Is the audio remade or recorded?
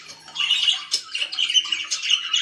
recorded